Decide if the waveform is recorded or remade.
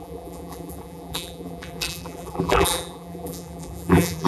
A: remade